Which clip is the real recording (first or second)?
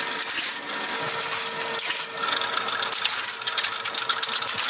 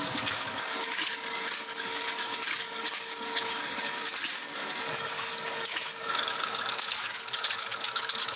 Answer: first